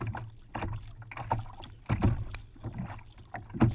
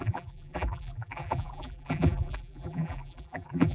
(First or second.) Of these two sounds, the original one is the first